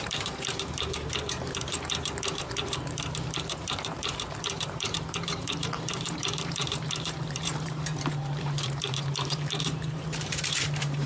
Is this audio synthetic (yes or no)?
yes